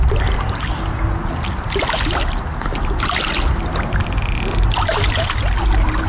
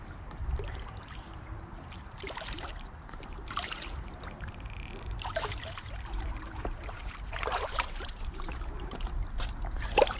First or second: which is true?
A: first